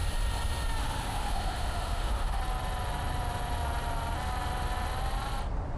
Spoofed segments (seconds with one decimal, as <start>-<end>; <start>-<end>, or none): 0.8-2.4